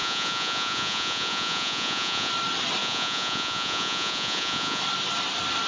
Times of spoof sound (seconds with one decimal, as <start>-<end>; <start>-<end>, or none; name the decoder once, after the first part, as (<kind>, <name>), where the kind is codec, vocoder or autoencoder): 0.0-2.3 (vocoder, Vocos); 2.8-4.8